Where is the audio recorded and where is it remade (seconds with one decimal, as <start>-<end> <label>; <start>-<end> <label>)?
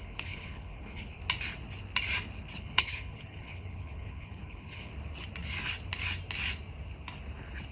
0.0-1.2 remade; 1.2-2.6 recorded; 2.6-4.9 remade; 4.9-7.7 recorded